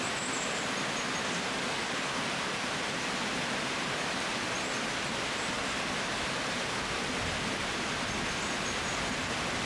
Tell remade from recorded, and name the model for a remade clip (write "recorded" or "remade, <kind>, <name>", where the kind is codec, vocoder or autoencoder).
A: recorded